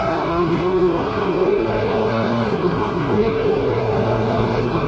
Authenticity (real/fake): fake